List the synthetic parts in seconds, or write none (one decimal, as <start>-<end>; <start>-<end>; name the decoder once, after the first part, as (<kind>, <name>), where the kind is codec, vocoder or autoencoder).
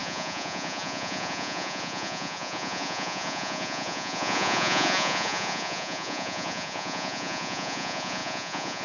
0.0-8.8 (vocoder, Vocos)